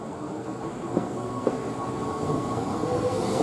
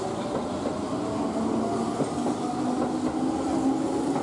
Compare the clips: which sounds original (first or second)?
second